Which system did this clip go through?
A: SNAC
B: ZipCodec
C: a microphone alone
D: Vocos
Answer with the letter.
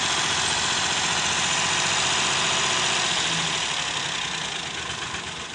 C